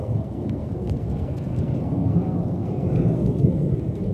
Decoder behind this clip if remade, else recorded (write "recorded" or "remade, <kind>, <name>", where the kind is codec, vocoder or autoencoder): remade, codec, SNAC